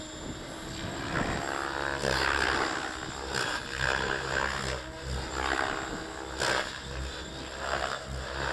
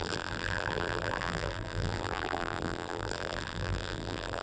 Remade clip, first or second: second